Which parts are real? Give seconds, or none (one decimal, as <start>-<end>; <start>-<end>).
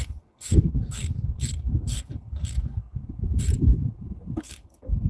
3.0-4.4